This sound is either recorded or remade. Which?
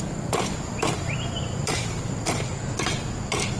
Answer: recorded